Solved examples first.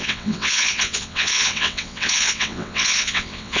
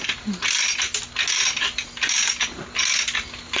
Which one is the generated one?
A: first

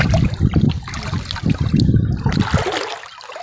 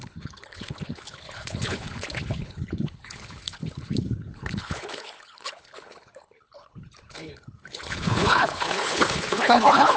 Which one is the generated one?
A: second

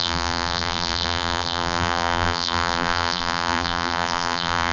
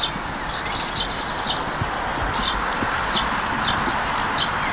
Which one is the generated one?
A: first